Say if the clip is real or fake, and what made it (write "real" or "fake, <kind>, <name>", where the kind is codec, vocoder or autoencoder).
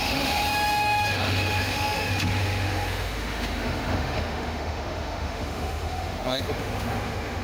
fake, autoencoder, DAC-VAE